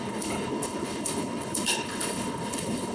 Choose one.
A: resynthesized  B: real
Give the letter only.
A